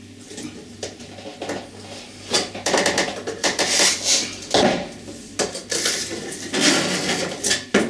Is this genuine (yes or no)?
yes